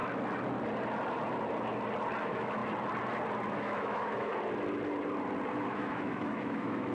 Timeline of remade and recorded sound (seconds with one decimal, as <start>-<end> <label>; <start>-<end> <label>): 0.0-2.2 recorded; 2.2-2.6 remade; 2.6-3.6 recorded; 3.6-4.3 remade; 4.3-5.6 recorded; 5.6-6.9 remade